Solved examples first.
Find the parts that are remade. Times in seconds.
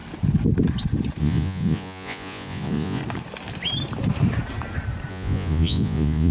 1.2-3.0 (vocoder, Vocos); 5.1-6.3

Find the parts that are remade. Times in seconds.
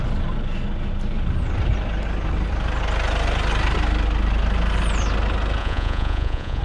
5.6-6.6 (vocoder, Vocos)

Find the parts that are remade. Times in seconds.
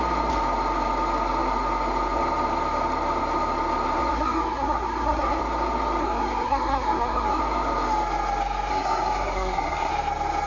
4.1-5.4 (codec, SNAC); 6.0-7.4; 8.7-9.9